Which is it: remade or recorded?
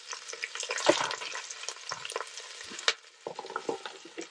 recorded